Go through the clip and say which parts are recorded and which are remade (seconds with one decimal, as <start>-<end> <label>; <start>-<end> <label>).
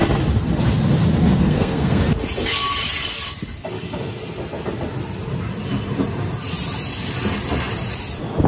0.0-1.2 recorded; 1.2-2.0 remade; 2.0-8.5 recorded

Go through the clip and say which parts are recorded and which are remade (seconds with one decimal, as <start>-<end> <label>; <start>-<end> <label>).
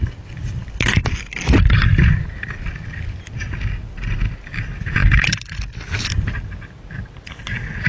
0.0-7.9 recorded